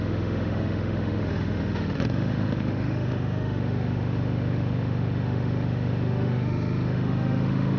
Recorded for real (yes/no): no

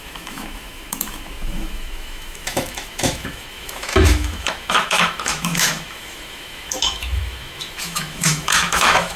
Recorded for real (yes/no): no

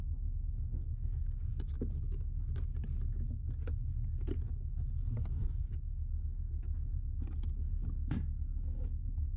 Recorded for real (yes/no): yes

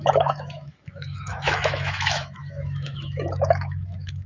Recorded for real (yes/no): no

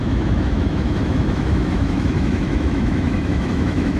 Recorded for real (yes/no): no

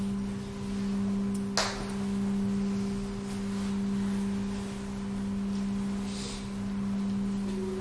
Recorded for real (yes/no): yes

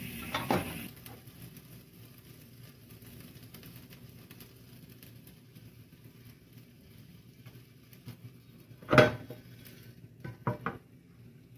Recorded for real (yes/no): yes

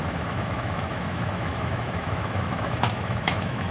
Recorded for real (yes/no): no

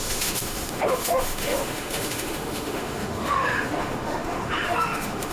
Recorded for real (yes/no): no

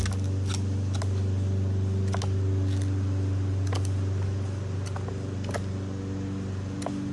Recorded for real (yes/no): yes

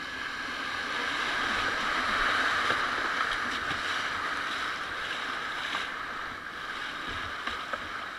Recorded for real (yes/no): yes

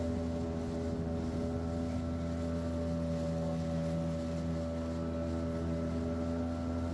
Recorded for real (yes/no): yes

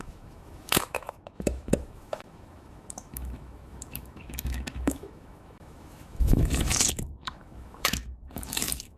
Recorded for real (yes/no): no